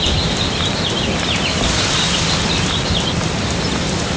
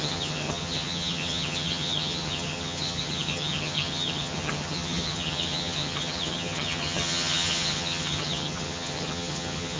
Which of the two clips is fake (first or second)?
second